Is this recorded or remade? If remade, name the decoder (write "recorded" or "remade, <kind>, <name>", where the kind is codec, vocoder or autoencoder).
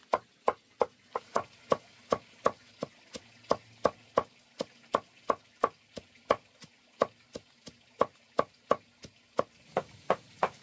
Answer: recorded